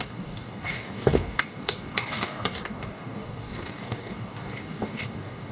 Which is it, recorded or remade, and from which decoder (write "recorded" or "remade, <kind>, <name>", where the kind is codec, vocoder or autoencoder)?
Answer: remade, codec, DAC